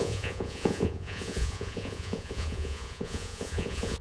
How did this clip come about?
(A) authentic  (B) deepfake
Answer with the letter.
B